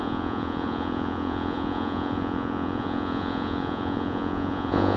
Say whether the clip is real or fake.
fake